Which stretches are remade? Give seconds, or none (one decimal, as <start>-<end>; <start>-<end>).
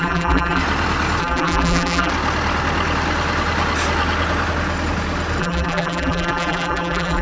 0.0-0.6; 1.2-2.1; 5.4-7.2